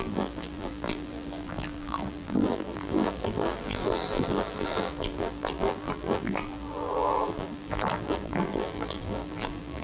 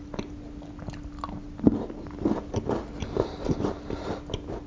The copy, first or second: first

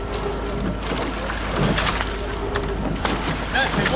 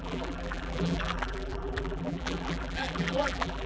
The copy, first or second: second